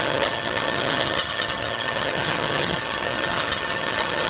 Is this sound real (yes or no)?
no